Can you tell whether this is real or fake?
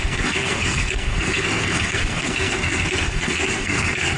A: fake